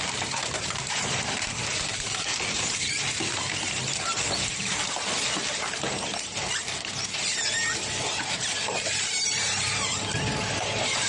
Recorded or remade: remade